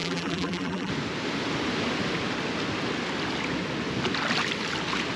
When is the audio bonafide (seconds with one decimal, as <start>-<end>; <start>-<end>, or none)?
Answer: 0.9-5.2